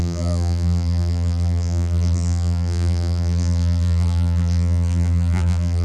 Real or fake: fake